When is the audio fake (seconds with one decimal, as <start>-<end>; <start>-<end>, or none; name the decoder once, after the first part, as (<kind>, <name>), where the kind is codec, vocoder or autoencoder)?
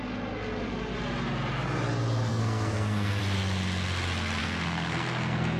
2.3-3.2 (codec, SNAC); 4.4-5.6